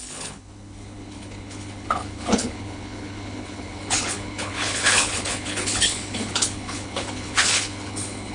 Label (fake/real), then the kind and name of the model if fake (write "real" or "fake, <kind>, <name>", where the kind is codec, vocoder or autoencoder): fake, codec, HILCodec